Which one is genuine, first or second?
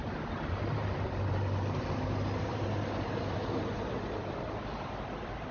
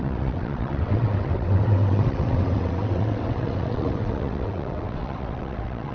first